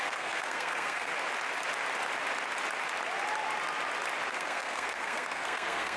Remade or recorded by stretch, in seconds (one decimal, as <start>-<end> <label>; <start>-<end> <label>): 0.0-1.1 remade; 1.1-4.3 recorded; 4.3-6.0 remade

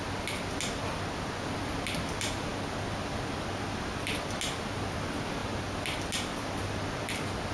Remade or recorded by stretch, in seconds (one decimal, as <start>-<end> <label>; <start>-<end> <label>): 0.0-7.5 recorded

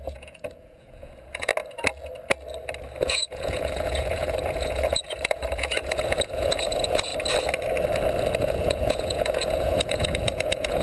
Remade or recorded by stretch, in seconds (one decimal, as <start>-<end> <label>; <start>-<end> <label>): 0.0-1.5 remade; 1.5-3.0 recorded; 3.0-7.1 remade; 7.1-8.4 recorded; 8.4-10.8 remade

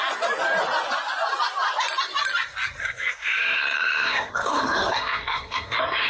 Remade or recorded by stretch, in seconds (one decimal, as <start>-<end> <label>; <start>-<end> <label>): 0.0-2.8 recorded; 2.8-6.1 remade

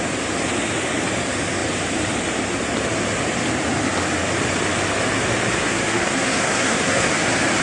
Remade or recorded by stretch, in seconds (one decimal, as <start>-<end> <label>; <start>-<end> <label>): 0.0-5.6 recorded; 5.6-7.1 remade; 7.1-7.6 recorded

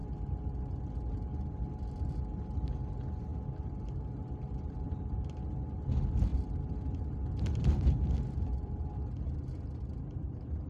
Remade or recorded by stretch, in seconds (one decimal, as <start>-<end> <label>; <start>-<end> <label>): 0.0-10.7 recorded

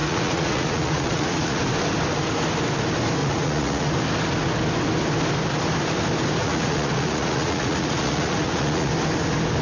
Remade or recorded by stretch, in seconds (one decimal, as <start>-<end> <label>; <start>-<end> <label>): 0.0-1.6 remade; 1.6-3.2 recorded; 3.2-3.9 remade; 3.9-6.4 recorded; 6.4-8.9 remade; 8.9-9.6 recorded